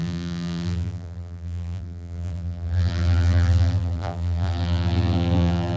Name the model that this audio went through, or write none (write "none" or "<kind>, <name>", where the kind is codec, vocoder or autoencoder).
vocoder, BigVGAN v2